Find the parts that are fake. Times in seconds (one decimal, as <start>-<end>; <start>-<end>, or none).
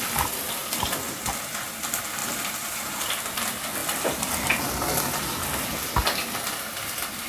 2.2-3.1